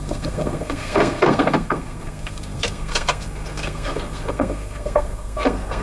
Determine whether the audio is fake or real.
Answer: fake